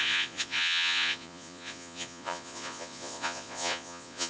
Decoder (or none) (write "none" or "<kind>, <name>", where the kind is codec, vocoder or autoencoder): vocoder, Vocos